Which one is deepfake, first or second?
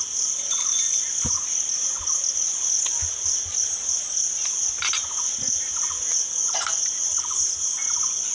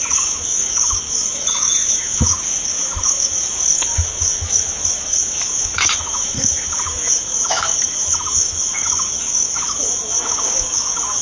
second